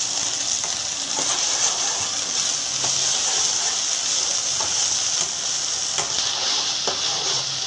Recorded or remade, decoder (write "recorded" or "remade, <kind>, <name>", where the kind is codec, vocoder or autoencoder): recorded